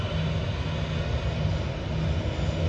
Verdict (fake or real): real